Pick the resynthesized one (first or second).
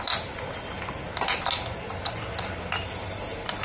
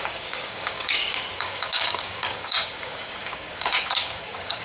second